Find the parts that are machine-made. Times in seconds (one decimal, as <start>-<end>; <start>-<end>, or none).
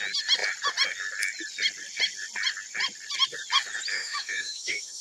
3.9-5.0